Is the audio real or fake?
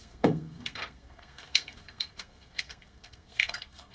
fake